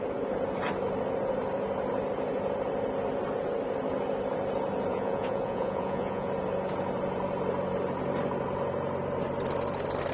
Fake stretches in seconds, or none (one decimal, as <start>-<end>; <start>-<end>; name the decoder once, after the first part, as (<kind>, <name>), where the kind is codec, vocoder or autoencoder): 4.9-6.3 (vocoder, Vocos)